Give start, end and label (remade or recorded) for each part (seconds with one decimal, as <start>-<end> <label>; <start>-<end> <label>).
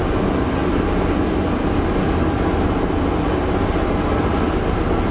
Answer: 0.0-5.1 recorded